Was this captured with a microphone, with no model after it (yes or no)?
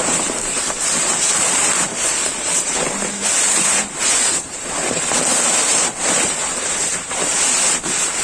no